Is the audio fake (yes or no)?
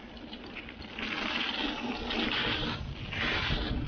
no